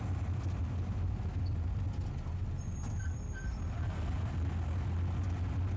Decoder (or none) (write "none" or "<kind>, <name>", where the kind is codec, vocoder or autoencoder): none